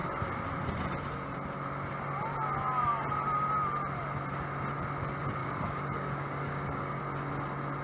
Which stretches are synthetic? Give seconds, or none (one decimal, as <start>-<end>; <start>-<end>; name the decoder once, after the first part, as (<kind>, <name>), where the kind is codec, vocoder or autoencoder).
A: 5.4-7.0 (codec, DAC)